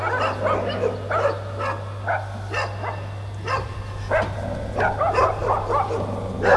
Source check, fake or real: real